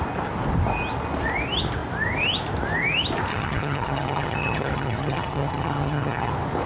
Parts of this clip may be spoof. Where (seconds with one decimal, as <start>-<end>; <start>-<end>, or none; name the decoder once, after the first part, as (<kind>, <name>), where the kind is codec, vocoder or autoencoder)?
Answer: 3.3-6.3 (vocoder, HiFi-GAN)